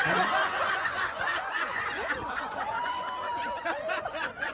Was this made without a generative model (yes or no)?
no